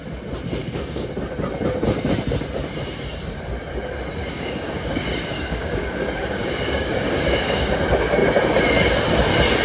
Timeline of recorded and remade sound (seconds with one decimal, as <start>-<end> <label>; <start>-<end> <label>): 0.0-0.6 recorded; 0.6-1.1 remade; 1.1-4.2 recorded; 4.2-7.7 remade; 7.7-9.6 recorded